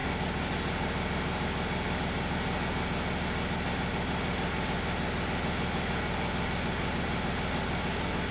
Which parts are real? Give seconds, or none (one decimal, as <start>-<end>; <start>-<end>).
0.0-8.3